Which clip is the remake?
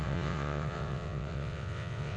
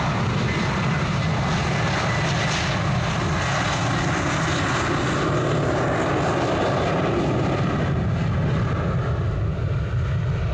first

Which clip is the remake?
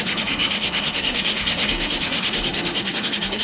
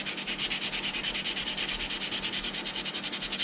first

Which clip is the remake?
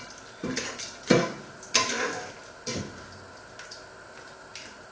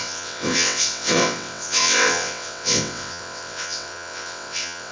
second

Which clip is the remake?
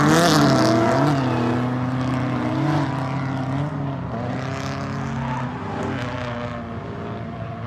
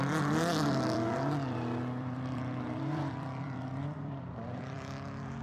second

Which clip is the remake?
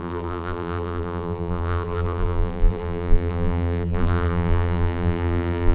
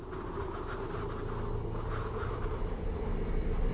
first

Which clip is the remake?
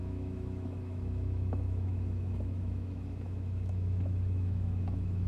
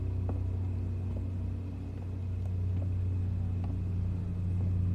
first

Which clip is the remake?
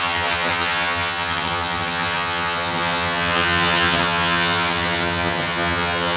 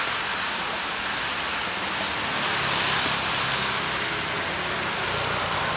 first